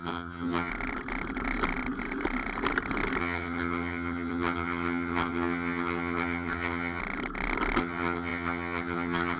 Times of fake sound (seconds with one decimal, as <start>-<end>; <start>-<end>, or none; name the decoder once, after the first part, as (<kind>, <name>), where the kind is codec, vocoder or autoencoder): 0.0-0.7 (vocoder, HiFi-GAN); 3.2-7.0; 7.8-9.4